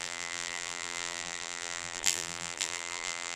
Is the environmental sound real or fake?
fake